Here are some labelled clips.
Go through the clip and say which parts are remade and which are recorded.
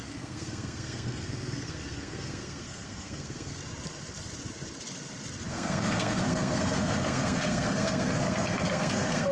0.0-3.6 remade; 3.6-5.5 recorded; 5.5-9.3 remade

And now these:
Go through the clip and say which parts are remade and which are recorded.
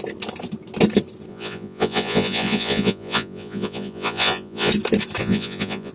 0.0-1.3 recorded; 1.3-4.7 remade; 4.7-5.2 recorded; 5.2-5.9 remade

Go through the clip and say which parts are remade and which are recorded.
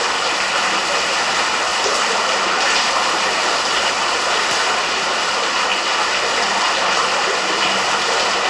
0.0-8.5 recorded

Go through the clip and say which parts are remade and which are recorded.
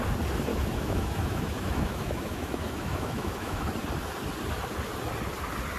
0.0-0.5 recorded; 0.5-3.7 remade; 3.7-5.8 recorded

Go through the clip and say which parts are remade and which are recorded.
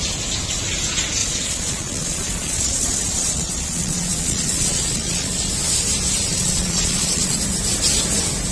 0.0-1.2 recorded; 1.2-5.5 remade; 5.5-6.3 recorded; 6.3-7.4 remade; 7.4-8.5 recorded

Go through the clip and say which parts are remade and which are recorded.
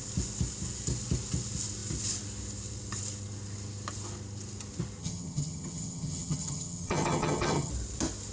0.0-5.0 recorded; 5.0-7.7 remade; 7.7-8.3 recorded